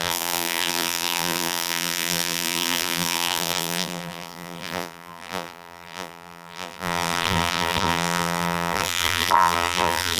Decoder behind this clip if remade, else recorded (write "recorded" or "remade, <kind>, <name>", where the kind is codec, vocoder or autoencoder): remade, vocoder, BigVGAN v2